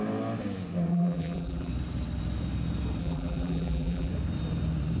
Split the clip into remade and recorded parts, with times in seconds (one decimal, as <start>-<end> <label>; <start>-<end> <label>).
0.0-0.9 recorded; 0.9-1.7 remade; 1.7-3.0 recorded; 3.0-4.1 remade; 4.1-5.0 recorded